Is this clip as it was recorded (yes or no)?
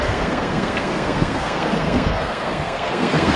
no